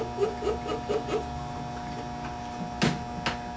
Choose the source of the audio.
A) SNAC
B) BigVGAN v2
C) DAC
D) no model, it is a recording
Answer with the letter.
D